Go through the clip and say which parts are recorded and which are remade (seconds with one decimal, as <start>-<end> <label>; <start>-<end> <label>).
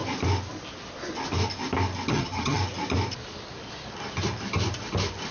0.0-2.1 recorded; 2.1-2.6 remade; 2.6-5.3 recorded